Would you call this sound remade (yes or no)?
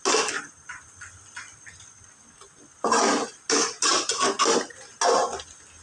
no